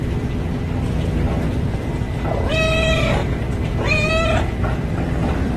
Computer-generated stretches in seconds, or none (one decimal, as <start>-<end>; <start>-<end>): 3.2-4.1